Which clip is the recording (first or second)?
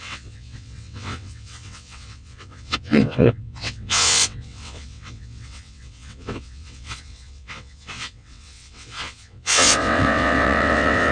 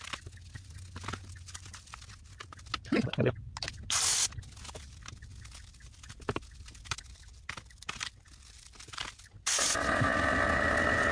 second